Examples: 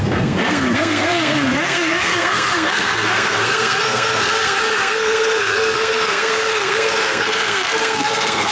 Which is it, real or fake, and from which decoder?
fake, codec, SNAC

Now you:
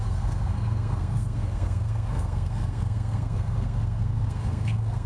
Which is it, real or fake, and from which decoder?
fake, codec, SNAC